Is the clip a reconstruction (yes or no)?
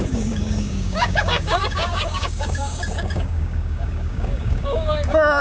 yes